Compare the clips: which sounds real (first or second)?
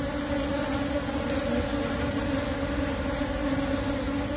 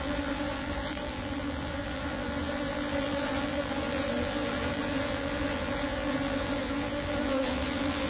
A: first